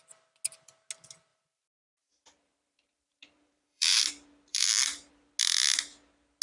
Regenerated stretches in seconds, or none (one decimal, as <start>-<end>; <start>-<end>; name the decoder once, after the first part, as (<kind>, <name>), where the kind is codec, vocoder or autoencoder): 1.3-4.1 (vocoder, BigVGAN v2); 4.5-5.1

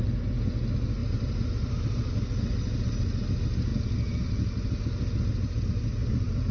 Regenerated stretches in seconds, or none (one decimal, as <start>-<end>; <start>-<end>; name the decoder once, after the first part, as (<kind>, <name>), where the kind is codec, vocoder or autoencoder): 1.0-2.1 (vocoder, BigVGAN v2); 6.0-6.5

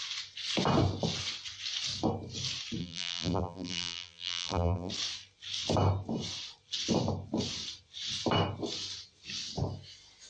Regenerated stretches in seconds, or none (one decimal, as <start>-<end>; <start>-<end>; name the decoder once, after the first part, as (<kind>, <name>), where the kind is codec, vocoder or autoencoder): 2.8-4.9 (vocoder, BigVGAN v2)